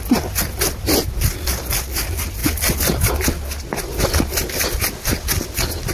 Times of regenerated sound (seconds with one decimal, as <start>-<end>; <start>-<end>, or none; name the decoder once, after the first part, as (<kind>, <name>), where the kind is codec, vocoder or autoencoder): 2.4-3.1 (vocoder, BigVGAN v2)